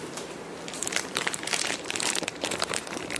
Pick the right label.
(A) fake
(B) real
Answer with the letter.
A